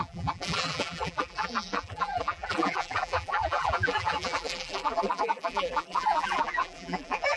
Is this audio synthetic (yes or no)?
yes